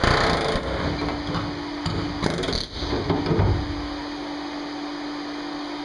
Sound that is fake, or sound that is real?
real